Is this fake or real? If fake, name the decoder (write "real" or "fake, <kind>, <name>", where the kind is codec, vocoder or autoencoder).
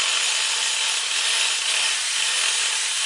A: real